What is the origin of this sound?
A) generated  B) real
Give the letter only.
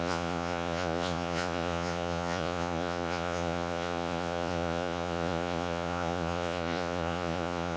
A